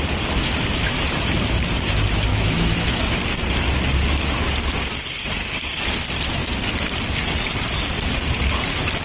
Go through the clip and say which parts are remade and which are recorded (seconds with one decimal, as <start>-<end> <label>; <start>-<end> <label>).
0.0-2.3 recorded; 2.3-3.2 remade; 3.2-9.0 recorded